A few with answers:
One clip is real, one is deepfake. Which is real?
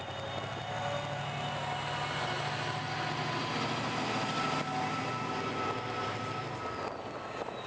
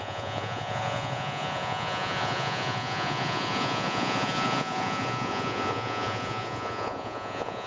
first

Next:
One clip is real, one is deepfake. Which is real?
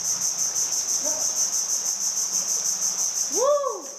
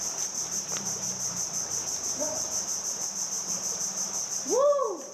first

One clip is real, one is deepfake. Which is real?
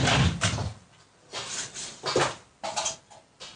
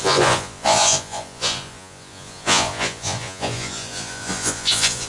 first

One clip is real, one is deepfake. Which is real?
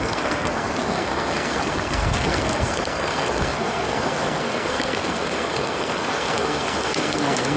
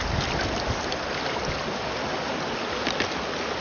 second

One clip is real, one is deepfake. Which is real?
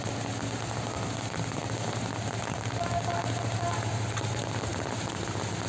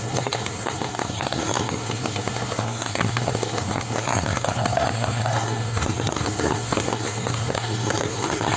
first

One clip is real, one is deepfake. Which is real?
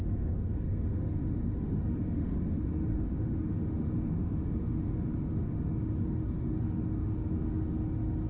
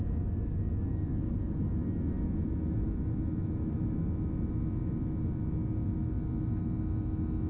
second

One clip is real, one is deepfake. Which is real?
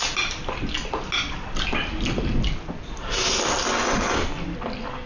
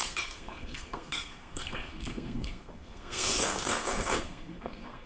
first